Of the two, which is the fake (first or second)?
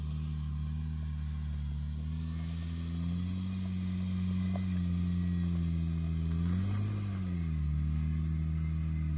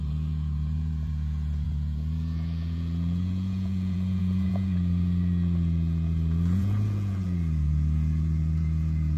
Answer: second